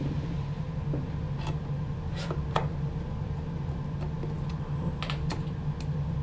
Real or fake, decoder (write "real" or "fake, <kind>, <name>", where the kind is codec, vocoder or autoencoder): real